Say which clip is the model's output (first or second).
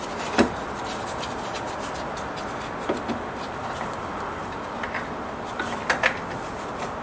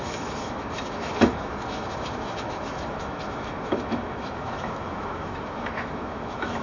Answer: second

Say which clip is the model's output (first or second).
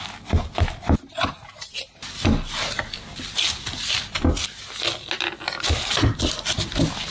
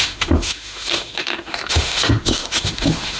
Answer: second